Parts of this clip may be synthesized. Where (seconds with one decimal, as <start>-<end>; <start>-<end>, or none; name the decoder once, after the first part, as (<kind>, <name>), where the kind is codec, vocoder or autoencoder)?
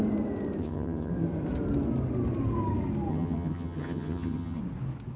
0.6-1.1 (vocoder, HiFi-GAN); 3.1-4.6